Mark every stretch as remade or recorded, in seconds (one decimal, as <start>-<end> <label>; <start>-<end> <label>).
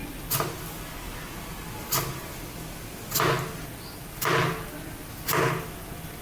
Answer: 0.0-6.2 recorded